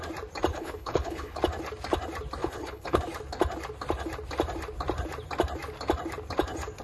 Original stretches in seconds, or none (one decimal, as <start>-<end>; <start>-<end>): 0.0-0.5; 1.4-2.4; 3.0-6.8